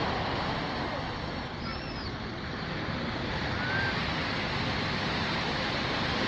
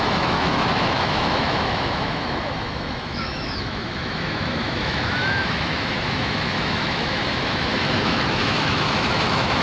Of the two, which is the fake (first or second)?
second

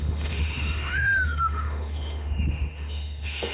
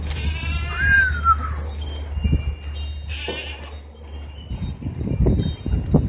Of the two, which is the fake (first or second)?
first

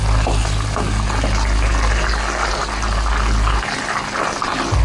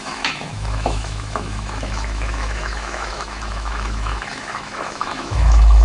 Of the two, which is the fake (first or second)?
second